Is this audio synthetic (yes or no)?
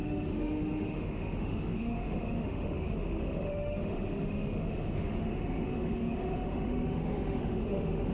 yes